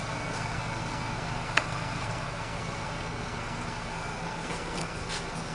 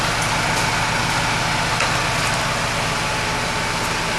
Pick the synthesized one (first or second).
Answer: first